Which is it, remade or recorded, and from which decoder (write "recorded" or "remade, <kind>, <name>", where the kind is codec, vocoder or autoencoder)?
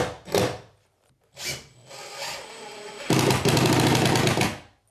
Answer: recorded